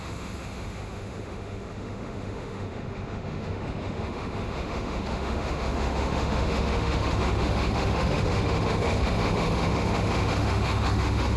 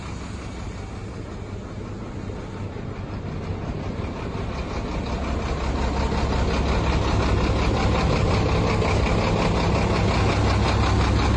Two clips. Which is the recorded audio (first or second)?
second